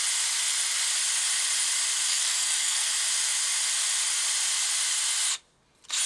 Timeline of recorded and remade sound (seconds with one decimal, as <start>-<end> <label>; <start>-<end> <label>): 0.0-2.1 recorded; 2.1-2.9 remade; 2.9-6.1 recorded